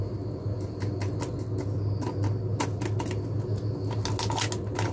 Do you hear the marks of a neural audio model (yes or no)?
no